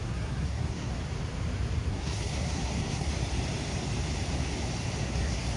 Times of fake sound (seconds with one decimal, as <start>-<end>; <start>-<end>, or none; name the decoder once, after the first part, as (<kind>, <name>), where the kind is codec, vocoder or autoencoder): 0.0-0.9 (codec, SNAC); 1.9-3.1; 5.0-5.6